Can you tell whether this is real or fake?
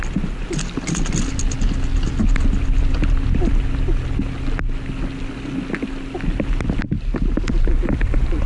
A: real